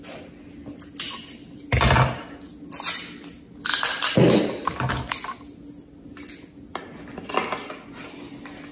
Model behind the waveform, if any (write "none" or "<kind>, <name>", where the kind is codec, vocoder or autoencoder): none